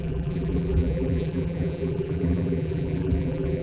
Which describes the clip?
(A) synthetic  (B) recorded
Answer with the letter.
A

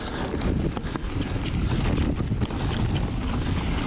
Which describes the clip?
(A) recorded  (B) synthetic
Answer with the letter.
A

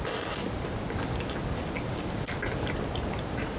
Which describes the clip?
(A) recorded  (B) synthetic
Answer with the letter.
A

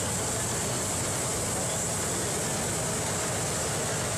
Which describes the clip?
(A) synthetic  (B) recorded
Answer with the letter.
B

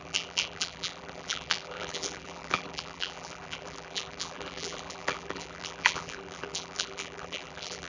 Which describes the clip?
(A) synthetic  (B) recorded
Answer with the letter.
A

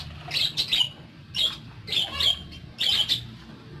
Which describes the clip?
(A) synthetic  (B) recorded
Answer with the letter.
B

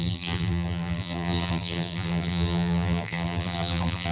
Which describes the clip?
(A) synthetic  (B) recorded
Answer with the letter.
A